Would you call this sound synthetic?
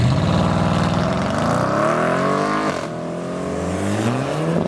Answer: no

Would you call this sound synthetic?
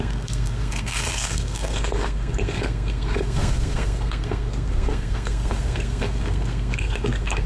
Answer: yes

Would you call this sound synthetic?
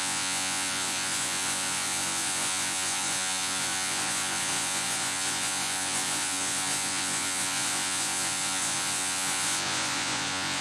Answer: yes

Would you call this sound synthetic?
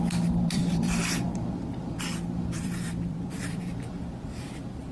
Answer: yes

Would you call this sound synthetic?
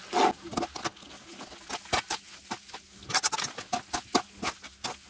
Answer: no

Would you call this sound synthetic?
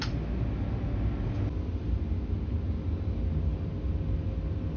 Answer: no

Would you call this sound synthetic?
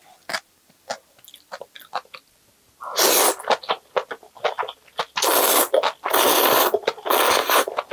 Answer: no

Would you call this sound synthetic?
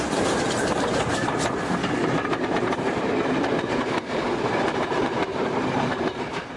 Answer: yes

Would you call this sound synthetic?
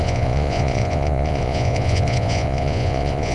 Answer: yes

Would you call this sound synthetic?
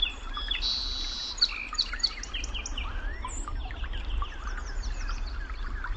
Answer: no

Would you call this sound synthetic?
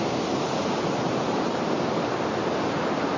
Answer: yes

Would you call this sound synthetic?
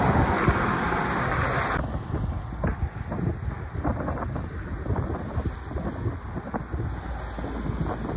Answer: no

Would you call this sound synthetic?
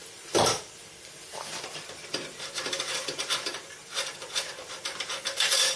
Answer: yes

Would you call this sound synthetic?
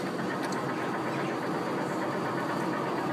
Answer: no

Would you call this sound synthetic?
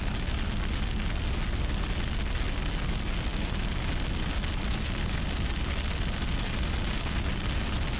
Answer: no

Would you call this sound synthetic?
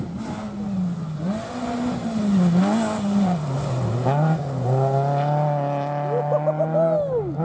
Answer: no